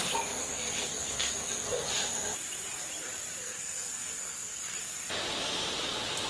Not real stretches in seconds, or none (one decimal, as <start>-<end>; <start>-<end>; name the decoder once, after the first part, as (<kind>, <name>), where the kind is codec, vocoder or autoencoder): 0.4-1.9 (codec, SNAC); 3.4-4.8